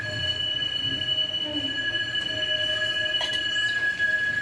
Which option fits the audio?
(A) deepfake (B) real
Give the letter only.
B